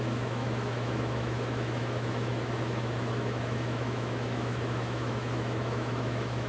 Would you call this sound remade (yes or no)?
yes